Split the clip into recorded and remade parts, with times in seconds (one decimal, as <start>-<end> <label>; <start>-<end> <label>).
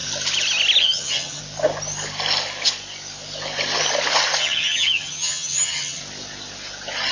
0.0-0.8 recorded; 0.8-1.4 remade; 1.4-4.4 recorded; 4.4-6.0 remade; 6.0-7.1 recorded